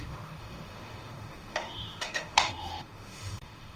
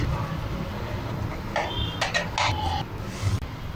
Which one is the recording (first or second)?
second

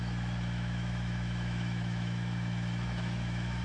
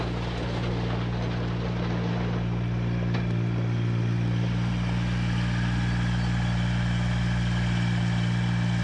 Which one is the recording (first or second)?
second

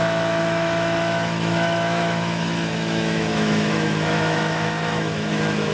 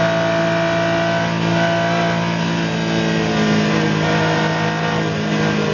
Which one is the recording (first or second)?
second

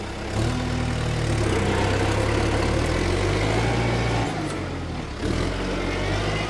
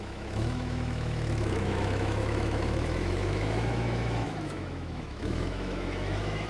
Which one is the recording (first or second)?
first